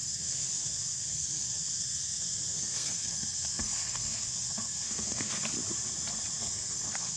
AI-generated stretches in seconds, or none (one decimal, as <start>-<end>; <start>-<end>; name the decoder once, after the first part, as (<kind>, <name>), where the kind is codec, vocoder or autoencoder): 0.0-5.4 (codec, SNAC); 6.4-7.2